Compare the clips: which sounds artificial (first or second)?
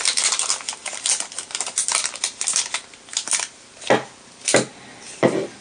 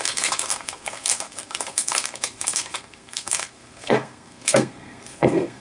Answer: second